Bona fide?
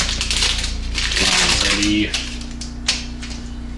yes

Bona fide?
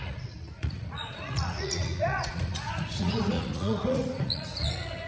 no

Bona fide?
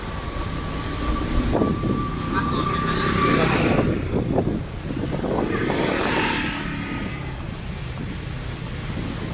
yes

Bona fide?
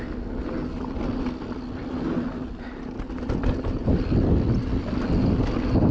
yes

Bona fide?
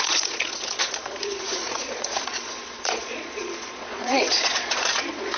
no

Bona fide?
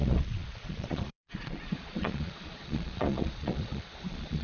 no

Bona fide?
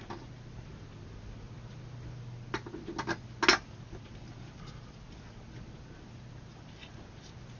yes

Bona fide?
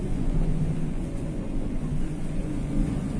no